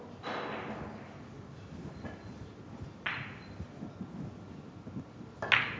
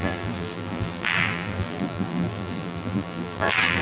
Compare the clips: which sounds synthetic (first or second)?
second